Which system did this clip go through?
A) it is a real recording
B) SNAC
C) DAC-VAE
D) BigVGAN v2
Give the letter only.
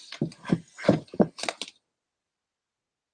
A